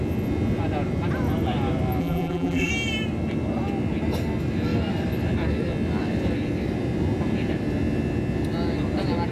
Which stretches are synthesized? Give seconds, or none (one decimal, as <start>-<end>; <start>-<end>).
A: 2.0-2.7

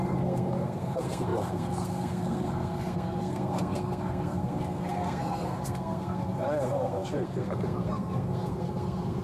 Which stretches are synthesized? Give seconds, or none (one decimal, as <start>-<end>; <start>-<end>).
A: 0.0-9.2

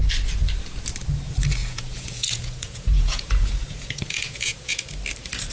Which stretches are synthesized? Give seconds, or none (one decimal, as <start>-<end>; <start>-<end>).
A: 1.6-4.9